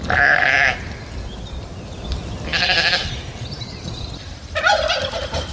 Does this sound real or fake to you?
real